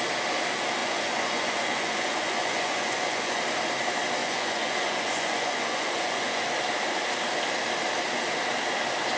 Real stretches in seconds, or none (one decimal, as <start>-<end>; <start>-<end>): 0.0-0.8; 3.4-4.2; 6.4-9.2